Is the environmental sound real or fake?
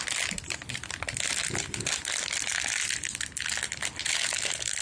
real